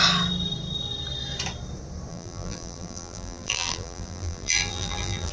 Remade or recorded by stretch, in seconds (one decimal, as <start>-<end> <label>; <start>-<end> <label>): 0.0-2.1 recorded; 2.1-5.3 remade

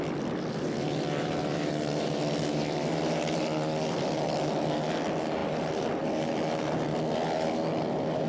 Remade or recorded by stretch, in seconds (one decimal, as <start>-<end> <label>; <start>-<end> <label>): 0.0-8.3 recorded

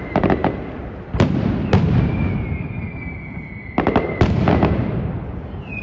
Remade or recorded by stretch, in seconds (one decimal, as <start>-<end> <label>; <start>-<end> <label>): 0.0-5.8 remade

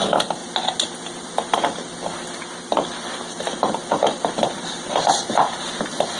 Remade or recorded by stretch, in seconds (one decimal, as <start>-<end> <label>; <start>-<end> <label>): 0.0-0.4 remade; 0.4-1.0 recorded; 1.0-1.8 remade; 1.8-3.4 recorded; 3.4-6.2 remade

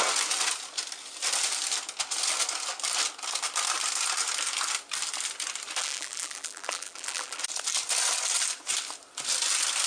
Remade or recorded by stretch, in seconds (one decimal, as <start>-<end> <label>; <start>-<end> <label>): 0.0-5.8 recorded; 5.8-7.4 remade; 7.4-9.9 recorded

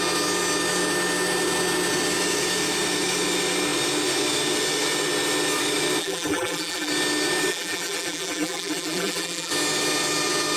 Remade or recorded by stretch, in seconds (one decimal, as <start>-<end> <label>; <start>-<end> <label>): 0.0-6.0 recorded; 6.0-6.9 remade; 6.9-7.5 recorded; 7.5-9.5 remade; 9.5-10.6 recorded

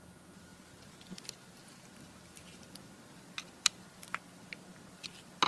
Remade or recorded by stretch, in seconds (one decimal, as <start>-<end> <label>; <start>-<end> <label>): 0.0-5.5 recorded

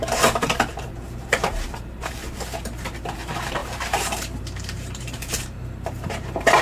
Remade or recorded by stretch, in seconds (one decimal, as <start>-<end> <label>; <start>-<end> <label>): 0.0-6.6 remade